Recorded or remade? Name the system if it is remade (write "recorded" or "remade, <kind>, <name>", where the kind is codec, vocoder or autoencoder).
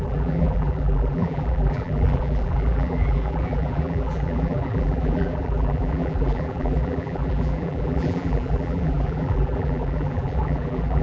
remade, vocoder, BigVGAN v2